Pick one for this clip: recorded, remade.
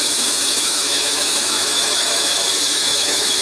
remade